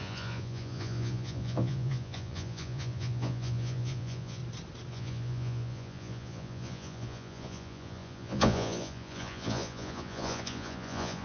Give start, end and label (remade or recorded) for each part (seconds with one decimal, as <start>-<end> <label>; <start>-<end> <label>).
0.0-4.4 remade; 4.4-4.9 recorded; 4.9-11.2 remade